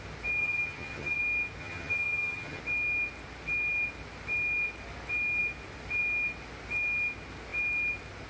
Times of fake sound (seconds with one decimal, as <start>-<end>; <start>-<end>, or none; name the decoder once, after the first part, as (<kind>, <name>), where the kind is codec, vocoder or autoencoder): 0.4-1.2 (vocoder, HiFi-GAN); 1.6-2.6